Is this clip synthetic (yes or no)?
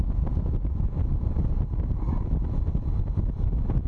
no